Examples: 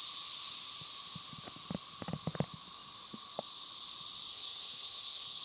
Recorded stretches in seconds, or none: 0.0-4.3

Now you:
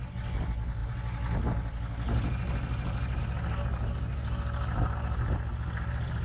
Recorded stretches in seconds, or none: 0.0-6.2

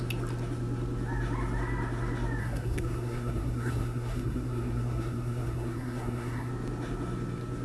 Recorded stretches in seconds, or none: 0.0-2.4; 6.5-7.6

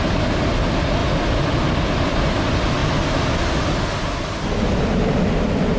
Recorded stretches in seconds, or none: 0.0-5.8

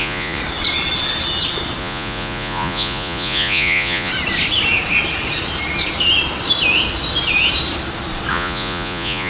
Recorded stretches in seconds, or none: 0.4-1.8; 4.1-8.3

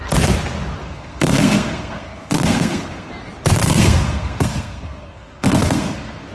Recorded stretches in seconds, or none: 0.0-0.8; 3.1-3.6

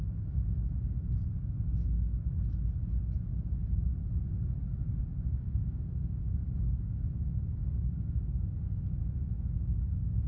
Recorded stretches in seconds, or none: 2.1-3.2; 3.9-5.0

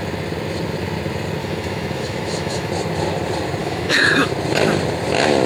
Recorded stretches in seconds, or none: 0.0-1.4; 2.7-3.6; 4.3-5.5